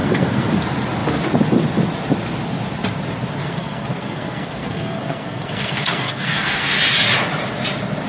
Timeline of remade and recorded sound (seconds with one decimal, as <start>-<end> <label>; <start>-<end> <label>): 0.0-0.6 remade; 0.6-3.4 recorded; 3.4-6.7 remade; 6.7-8.1 recorded